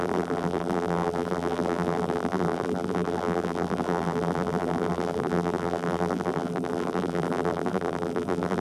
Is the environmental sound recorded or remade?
remade